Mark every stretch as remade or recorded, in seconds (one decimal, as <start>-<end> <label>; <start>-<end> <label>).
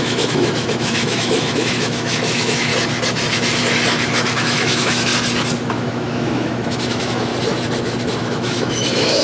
0.0-2.7 remade; 2.7-4.3 recorded; 4.3-5.1 remade; 5.1-5.7 recorded; 5.7-7.3 remade; 7.3-8.2 recorded; 8.2-9.2 remade